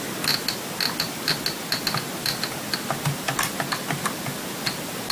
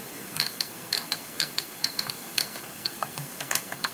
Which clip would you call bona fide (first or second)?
first